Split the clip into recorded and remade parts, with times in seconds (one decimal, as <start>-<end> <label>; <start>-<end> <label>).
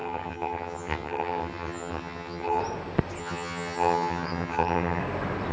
0.0-2.6 remade; 2.6-3.2 recorded; 3.2-5.0 remade; 5.0-5.5 recorded